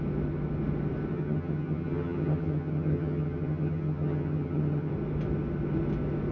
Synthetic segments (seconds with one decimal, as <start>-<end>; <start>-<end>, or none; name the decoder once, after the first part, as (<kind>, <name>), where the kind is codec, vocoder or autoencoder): 1.1-4.9 (vocoder, HiFi-GAN)